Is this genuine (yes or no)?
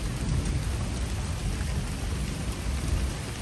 yes